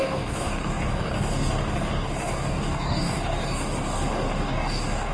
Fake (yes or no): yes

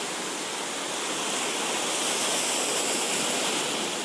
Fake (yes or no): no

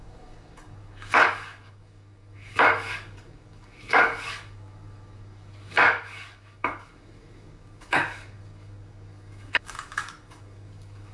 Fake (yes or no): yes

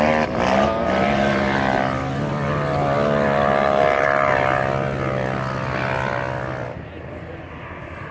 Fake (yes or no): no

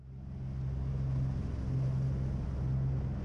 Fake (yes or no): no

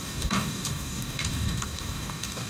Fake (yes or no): yes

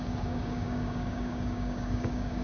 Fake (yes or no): yes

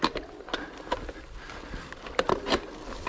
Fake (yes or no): no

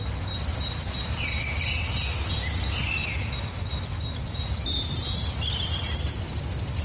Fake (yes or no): no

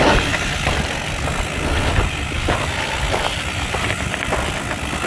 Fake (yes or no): no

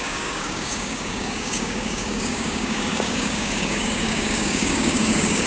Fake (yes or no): yes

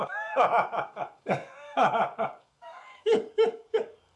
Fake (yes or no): yes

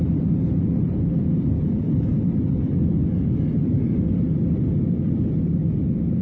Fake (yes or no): no